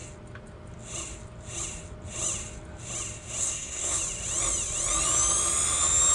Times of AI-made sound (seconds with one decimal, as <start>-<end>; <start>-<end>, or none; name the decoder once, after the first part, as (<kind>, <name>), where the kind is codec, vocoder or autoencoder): 3.4-4.0 (codec, SNAC)